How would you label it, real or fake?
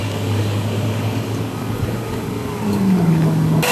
fake